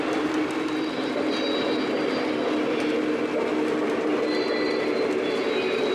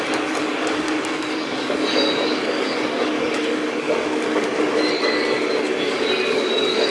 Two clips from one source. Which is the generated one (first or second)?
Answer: second